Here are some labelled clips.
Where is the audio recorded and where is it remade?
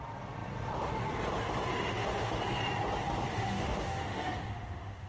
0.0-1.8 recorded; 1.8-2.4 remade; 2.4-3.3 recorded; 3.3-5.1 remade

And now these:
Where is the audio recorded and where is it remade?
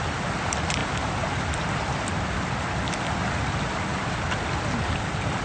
0.0-5.4 recorded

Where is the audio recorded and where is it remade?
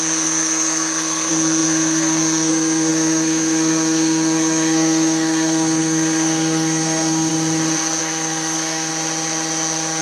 0.0-7.3 remade; 7.3-8.0 recorded; 8.0-8.9 remade; 8.9-10.0 recorded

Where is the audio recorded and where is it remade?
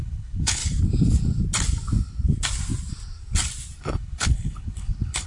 0.0-0.6 remade; 0.6-3.8 recorded; 3.8-5.3 remade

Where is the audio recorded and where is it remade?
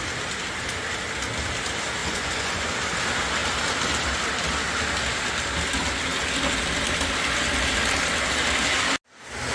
0.0-2.0 recorded; 2.0-2.7 remade; 2.7-9.5 recorded